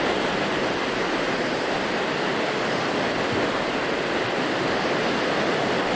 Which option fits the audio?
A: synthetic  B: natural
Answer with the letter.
B